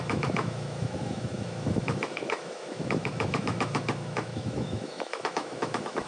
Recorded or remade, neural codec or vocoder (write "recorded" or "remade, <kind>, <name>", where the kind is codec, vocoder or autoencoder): remade, autoencoder, DAC-VAE